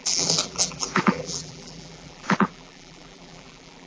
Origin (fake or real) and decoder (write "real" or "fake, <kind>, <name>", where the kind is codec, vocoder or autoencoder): fake, vocoder, BigVGAN v2